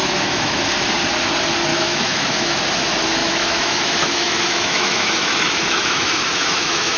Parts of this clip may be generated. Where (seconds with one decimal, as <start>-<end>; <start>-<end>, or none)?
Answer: 0.0-0.6; 1.7-2.6; 3.2-7.0